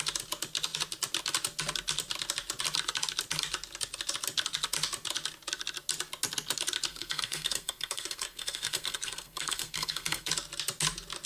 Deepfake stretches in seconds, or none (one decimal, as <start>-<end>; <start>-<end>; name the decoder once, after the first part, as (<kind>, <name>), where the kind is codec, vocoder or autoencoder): 6.9-10.3 (codec, SNAC)